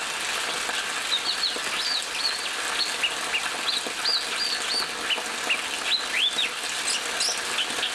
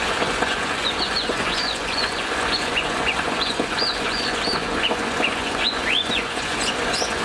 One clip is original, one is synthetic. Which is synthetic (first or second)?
second